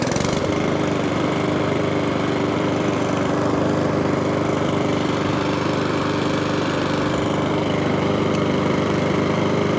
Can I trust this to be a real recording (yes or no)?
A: no